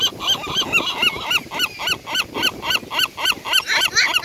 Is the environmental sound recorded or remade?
recorded